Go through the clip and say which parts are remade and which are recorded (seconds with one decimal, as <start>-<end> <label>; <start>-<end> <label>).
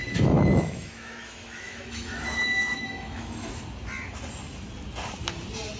0.0-3.5 remade; 3.5-5.8 recorded